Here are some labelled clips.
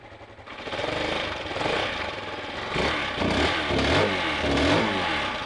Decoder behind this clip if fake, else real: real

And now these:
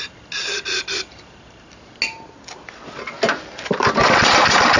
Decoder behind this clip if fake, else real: real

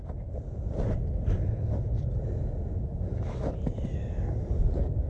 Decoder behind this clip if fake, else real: real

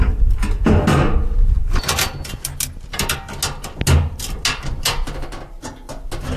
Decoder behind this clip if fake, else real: real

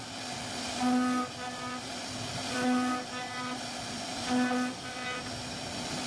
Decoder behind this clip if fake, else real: real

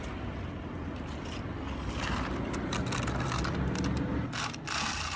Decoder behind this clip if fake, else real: real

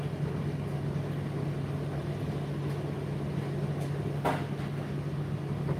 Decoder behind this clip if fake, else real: real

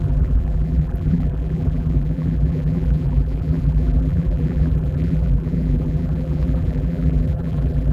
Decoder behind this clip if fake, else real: fake, vocoder, BigVGAN v2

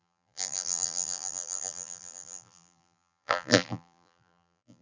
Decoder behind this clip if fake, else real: fake, vocoder, BigVGAN v2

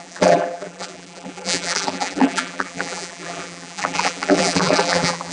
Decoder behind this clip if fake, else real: fake, vocoder, BigVGAN v2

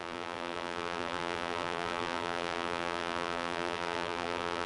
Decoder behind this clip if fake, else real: fake, vocoder, BigVGAN v2